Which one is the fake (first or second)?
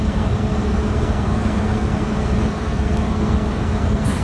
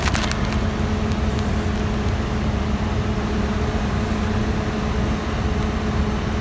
first